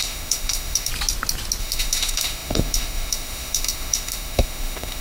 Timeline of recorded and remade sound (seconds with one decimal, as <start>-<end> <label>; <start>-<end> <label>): 0.0-0.9 remade; 0.9-1.6 recorded; 1.6-5.0 remade